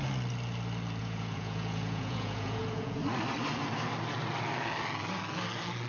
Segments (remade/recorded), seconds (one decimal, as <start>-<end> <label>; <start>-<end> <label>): 0.0-1.0 recorded; 1.0-3.0 remade; 3.0-5.9 recorded